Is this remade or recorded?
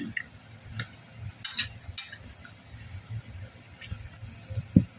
recorded